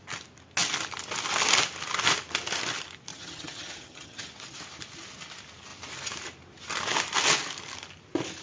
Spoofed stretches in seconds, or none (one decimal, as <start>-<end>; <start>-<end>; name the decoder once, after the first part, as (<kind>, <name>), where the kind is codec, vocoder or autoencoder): 3.1-4.3 (vocoder, HiFi-GAN)